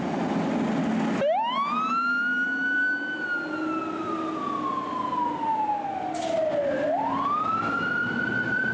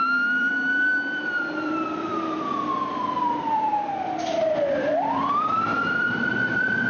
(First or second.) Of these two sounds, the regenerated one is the second